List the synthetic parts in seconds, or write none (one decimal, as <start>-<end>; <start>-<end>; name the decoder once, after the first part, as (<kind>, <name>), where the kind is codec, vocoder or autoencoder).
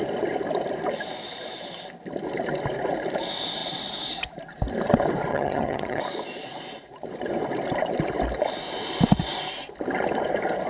5.3-6.0 (vocoder, HiFi-GAN)